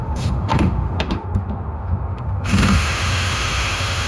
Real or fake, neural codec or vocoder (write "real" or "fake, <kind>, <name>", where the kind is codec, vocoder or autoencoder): fake, autoencoder, DAC-VAE